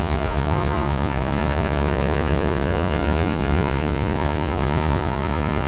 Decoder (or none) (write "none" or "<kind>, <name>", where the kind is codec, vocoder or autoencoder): vocoder, Vocos